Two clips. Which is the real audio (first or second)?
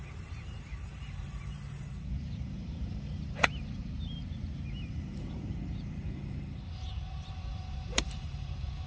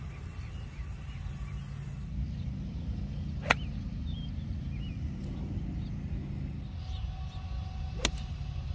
second